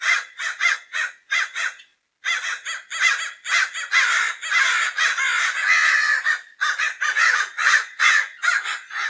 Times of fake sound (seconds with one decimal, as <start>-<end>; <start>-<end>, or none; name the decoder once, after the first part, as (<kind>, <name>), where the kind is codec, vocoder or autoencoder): 0.0-1.9 (vocoder, Vocos); 7.0-9.1